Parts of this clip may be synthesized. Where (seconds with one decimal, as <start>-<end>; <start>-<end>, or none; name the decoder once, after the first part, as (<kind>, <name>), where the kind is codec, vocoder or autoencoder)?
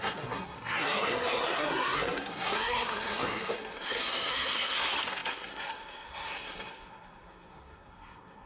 0.0-8.5 (codec, SNAC)